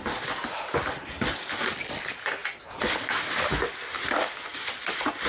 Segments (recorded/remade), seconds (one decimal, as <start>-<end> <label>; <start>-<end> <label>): 0.0-2.4 recorded; 2.4-3.5 remade; 3.5-4.5 recorded; 4.5-5.3 remade